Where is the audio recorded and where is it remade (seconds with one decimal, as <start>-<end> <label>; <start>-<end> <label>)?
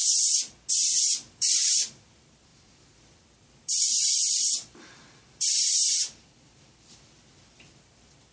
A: 0.0-0.7 recorded; 0.7-8.3 remade